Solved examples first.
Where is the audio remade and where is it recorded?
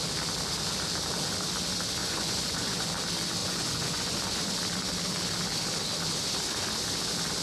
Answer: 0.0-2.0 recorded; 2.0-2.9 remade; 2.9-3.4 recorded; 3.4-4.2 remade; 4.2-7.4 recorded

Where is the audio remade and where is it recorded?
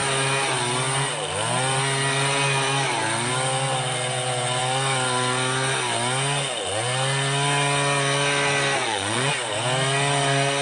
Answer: 0.0-8.8 recorded; 8.8-9.3 remade; 9.3-10.6 recorded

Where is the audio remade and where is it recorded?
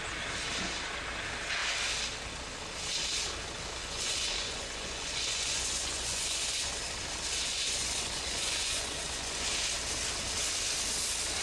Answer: 0.0-3.8 recorded; 3.8-6.7 remade; 6.7-7.5 recorded; 7.5-9.5 remade; 9.5-11.4 recorded